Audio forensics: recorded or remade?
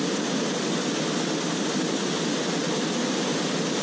recorded